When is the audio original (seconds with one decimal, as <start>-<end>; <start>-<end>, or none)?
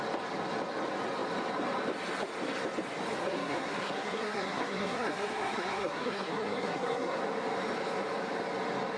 0.0-3.2; 7.2-9.0